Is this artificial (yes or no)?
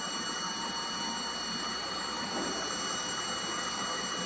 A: yes